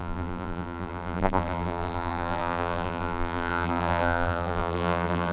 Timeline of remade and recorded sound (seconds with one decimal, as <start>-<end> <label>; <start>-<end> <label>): 0.0-5.3 remade